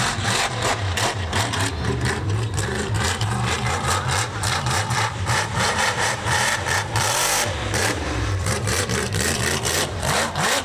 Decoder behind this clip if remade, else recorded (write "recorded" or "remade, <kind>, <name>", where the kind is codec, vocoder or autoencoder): remade, vocoder, BigVGAN v2